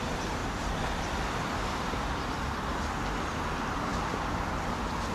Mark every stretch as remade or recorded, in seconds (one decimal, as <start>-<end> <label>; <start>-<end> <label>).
0.0-0.4 recorded; 0.4-2.8 remade; 2.8-5.1 recorded